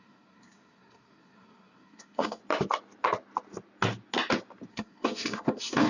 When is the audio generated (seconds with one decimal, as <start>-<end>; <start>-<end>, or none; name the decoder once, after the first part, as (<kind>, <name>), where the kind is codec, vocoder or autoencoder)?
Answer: 0.0-2.4 (codec, SNAC); 4.7-5.9